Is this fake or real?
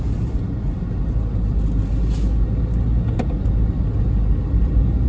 real